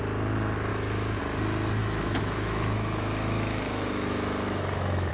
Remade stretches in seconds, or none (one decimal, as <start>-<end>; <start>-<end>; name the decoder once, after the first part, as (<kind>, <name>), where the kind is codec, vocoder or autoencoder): 0.7-1.2 (autoencoder, DAC-VAE); 1.8-5.1